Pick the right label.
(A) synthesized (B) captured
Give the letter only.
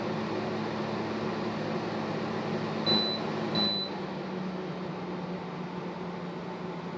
B